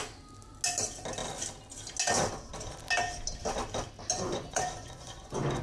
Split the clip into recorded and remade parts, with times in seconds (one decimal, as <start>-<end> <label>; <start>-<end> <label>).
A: 0.0-4.1 recorded; 4.1-5.6 remade